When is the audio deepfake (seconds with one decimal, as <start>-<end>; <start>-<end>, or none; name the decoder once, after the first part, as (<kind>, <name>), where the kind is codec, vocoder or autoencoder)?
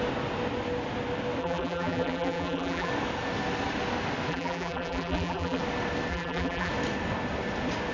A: 1.4-2.9 (vocoder, BigVGAN v2); 4.3-5.6; 6.1-6.7